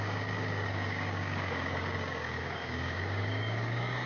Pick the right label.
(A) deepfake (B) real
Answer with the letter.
A